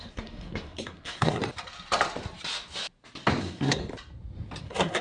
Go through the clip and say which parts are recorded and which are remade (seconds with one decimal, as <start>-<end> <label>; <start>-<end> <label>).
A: 0.0-1.4 remade; 1.4-3.4 recorded; 3.4-3.8 remade; 3.8-4.6 recorded; 4.6-5.0 remade